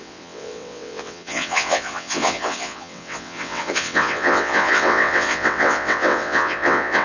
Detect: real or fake fake